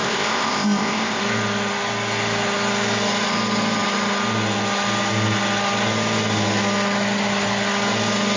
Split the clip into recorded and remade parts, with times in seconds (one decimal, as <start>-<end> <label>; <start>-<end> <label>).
0.0-1.2 remade; 1.2-8.4 recorded